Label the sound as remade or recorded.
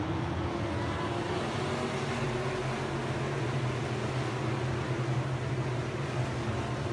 recorded